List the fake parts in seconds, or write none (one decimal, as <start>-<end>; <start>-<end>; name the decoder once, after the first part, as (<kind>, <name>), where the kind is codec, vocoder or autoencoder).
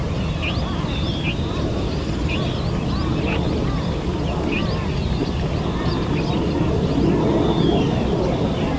none